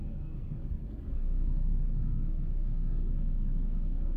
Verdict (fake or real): fake